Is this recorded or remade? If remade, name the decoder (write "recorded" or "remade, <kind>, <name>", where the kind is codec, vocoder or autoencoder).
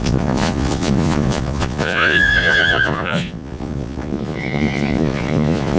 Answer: remade, vocoder, Vocos